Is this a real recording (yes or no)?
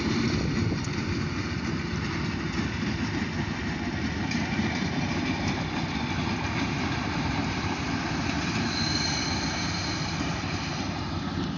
no